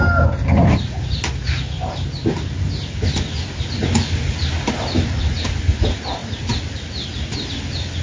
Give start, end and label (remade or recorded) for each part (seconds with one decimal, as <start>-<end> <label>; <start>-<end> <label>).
0.0-8.0 recorded